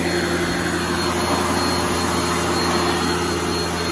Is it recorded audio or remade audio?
recorded